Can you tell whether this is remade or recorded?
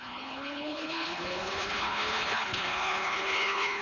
remade